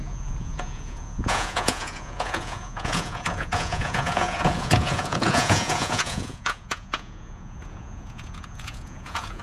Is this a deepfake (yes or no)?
yes